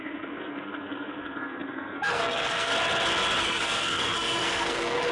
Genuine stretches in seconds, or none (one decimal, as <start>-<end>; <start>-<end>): 2.7-3.4